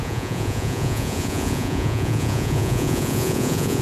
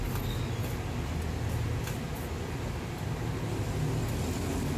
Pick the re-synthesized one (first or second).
first